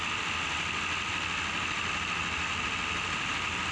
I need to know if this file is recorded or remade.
recorded